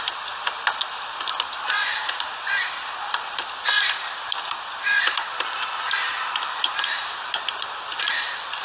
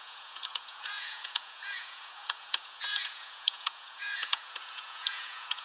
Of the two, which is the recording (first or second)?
first